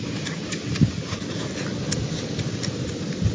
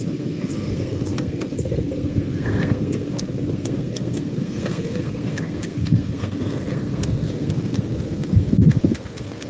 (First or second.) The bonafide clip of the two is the first